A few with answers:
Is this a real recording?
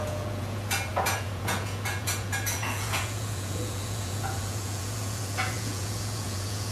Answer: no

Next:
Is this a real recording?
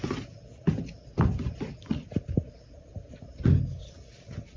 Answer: yes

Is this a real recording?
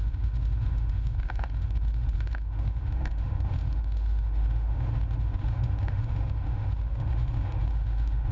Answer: no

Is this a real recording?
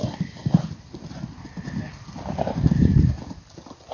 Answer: yes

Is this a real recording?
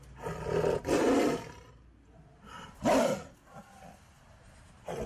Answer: yes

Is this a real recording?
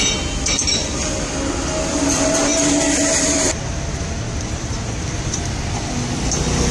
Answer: yes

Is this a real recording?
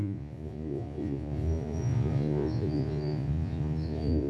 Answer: no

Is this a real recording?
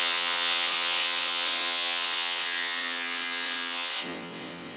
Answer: no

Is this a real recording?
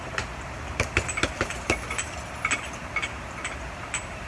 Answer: yes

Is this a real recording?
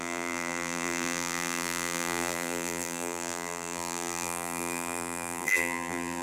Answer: no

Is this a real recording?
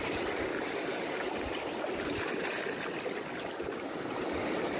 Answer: yes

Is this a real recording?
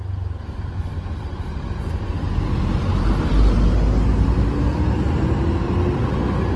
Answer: yes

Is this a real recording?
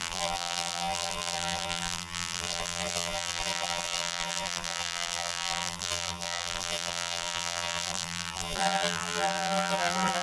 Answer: no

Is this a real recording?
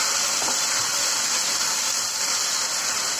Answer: yes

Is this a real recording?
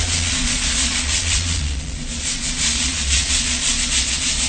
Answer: no